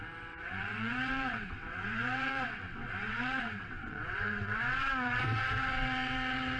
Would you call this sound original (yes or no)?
no